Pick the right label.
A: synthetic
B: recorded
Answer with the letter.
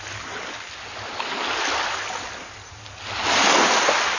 B